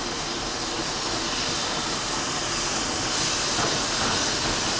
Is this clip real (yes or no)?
yes